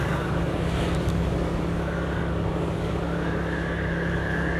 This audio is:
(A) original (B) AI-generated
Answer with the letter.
B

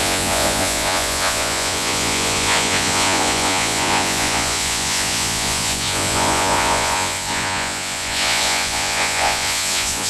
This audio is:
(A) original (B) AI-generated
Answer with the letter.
B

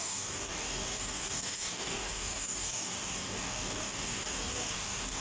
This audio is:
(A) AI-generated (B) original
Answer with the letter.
A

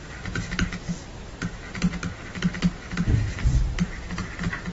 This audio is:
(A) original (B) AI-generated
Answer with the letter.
A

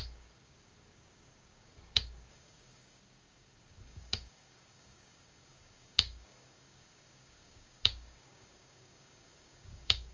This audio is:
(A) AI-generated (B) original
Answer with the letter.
A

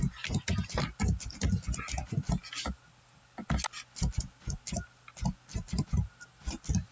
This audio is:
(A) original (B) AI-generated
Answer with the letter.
A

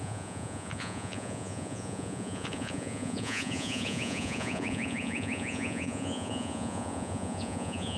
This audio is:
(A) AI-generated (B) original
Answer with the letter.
A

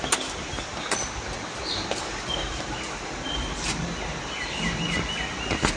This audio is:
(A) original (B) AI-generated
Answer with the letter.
A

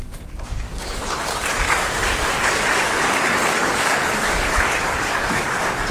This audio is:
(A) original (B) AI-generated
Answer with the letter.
B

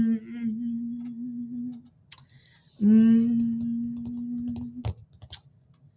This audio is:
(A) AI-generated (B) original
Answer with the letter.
B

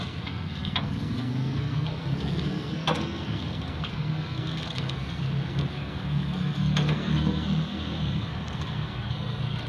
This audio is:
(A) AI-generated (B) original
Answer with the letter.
A